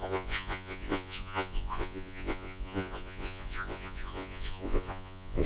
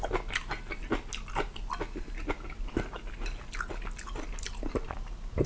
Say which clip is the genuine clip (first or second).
second